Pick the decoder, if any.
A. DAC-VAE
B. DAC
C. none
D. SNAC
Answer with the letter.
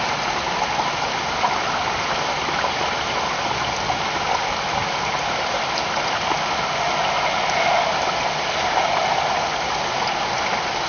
C